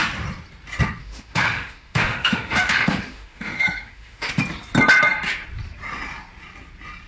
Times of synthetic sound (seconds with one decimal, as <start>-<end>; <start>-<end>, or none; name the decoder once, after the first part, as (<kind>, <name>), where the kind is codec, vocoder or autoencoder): 1.0-4.3 (autoencoder, DAC-VAE)